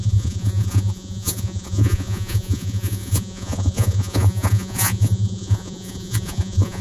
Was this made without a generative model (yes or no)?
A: no